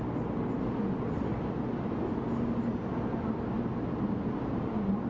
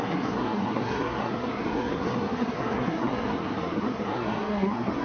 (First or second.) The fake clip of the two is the second